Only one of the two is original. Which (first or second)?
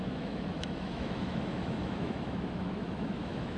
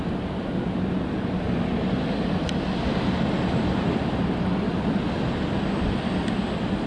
second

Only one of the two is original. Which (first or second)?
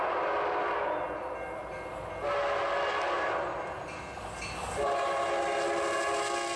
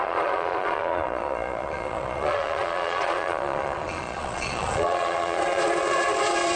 first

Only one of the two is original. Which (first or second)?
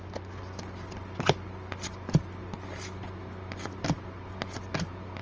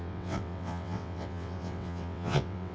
first